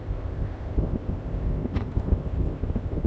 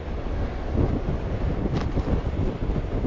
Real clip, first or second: second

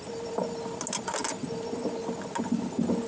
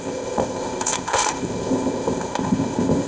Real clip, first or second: first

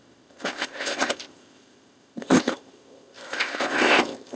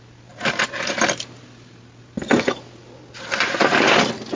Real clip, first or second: second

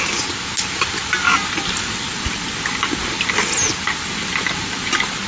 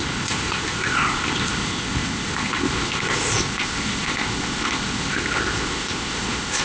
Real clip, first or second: first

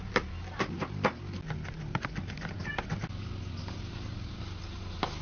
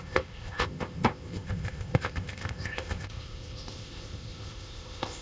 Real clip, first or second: first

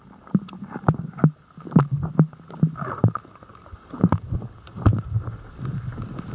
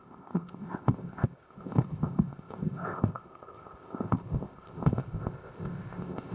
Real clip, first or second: first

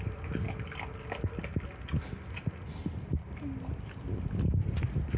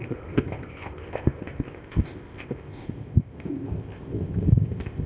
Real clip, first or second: first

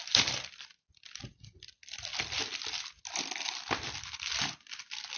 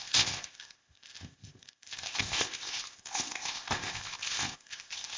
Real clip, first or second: first